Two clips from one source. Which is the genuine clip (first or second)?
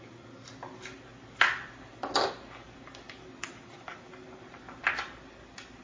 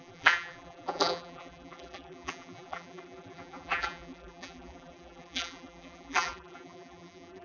first